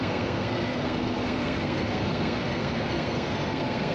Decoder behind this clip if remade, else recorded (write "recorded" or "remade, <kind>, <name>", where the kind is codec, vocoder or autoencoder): remade, codec, SNAC